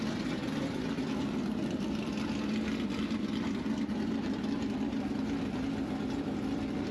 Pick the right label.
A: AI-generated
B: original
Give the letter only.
B